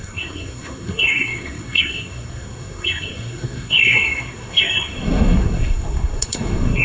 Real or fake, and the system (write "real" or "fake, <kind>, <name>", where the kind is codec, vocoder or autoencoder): fake, codec, SNAC